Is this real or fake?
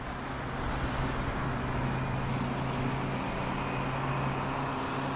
real